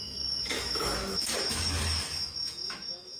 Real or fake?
fake